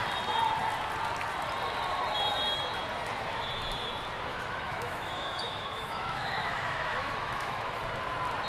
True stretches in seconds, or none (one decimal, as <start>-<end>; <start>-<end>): 0.0-4.3; 7.8-8.5